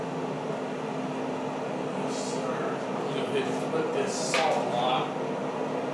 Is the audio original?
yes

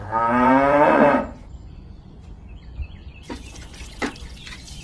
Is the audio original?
no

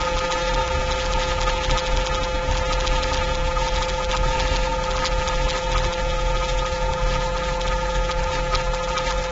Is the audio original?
no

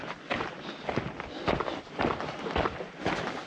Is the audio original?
yes